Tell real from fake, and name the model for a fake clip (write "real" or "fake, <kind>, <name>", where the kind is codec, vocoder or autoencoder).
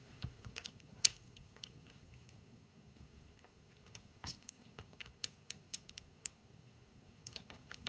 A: fake, codec, SNAC